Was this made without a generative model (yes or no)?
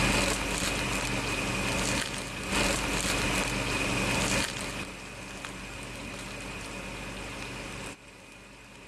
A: yes